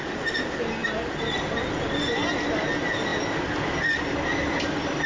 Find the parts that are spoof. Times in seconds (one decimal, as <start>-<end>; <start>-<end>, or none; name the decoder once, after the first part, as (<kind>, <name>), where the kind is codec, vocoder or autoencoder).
none